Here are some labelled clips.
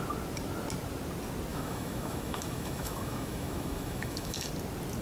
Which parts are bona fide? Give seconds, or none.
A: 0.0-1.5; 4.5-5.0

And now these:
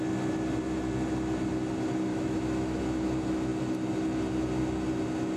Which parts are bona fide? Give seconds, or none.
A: 0.0-2.1; 2.8-5.4

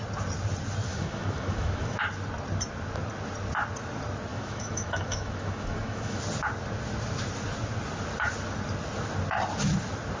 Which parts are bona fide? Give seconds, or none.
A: 0.0-0.9; 2.0-4.3; 6.2-10.2

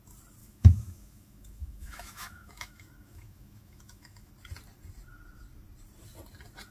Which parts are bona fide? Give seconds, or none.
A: 0.0-0.4; 4.3-6.7

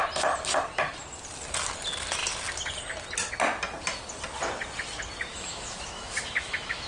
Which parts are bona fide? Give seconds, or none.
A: 0.0-5.3

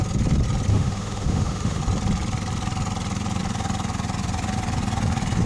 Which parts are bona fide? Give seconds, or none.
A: 0.0-0.7; 1.8-5.5

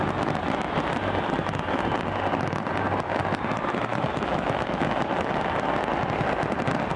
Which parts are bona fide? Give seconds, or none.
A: 0.0-3.9; 5.4-7.0